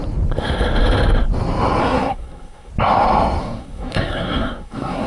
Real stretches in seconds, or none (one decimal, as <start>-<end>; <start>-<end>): 0.0-1.8; 2.7-3.4